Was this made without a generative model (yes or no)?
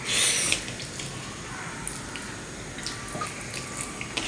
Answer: yes